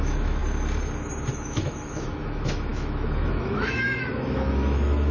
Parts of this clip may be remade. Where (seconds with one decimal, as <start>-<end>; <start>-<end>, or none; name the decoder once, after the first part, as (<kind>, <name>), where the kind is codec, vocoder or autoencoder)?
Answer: 0.0-0.4 (autoencoder, DAC-VAE); 1.3-5.1